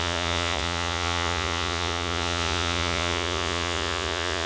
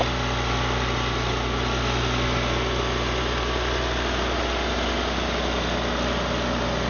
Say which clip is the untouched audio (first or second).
second